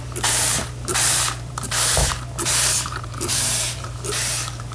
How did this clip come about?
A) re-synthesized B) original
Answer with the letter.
A